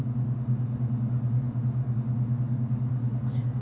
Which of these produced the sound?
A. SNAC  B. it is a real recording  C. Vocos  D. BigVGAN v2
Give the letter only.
B